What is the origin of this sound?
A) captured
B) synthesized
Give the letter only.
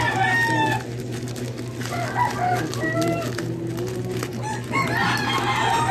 A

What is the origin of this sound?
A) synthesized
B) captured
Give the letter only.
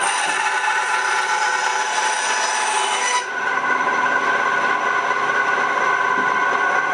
B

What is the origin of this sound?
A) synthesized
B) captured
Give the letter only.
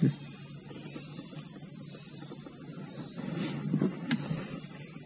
B